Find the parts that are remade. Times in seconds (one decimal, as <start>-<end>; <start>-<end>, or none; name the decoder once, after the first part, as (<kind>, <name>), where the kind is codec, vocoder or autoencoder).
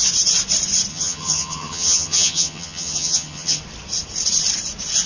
0.9-3.6 (vocoder, HiFi-GAN)